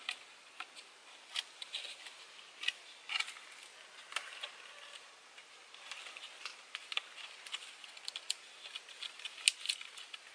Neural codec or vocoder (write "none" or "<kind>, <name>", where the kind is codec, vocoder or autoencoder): none